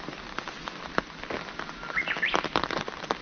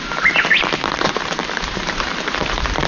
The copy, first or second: second